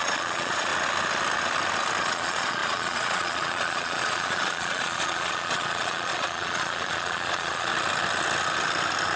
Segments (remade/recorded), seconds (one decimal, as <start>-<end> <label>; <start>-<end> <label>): 0.0-0.7 remade; 0.7-2.0 recorded; 2.0-7.7 remade; 7.7-9.2 recorded

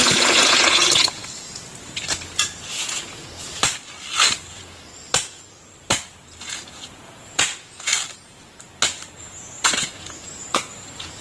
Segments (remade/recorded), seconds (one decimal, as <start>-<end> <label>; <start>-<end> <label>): 0.0-1.2 remade; 1.2-2.4 recorded; 2.4-3.6 remade; 3.6-4.5 recorded; 4.5-4.9 remade; 4.9-6.4 recorded; 6.4-7.9 remade; 7.9-9.2 recorded; 9.2-11.2 remade